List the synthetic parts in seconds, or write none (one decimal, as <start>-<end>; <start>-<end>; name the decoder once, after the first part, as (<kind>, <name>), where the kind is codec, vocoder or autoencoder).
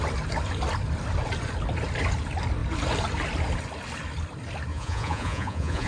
4.7-5.9 (vocoder, Vocos)